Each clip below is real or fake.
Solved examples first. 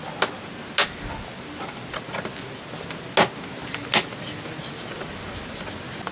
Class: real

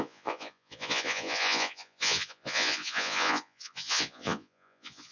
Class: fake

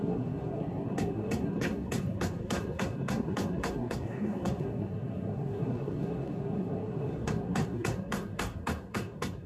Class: fake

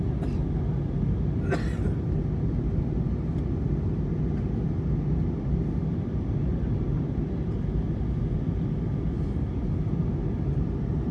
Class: real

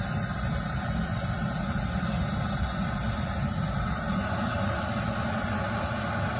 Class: real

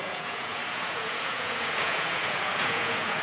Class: fake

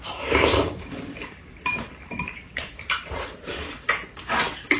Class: fake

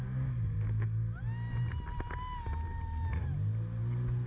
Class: real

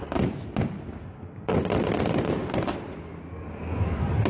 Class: real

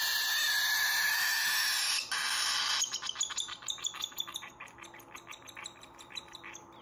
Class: real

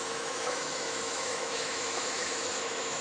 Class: fake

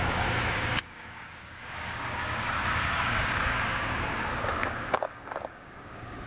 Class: fake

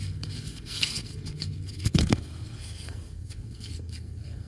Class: fake